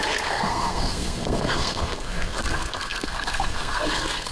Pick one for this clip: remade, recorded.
remade